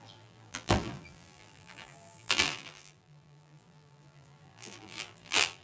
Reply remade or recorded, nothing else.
remade